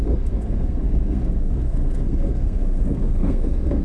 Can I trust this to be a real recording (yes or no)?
no